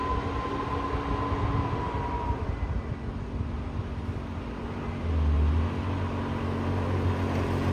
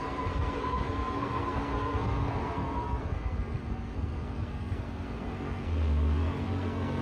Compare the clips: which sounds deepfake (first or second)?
second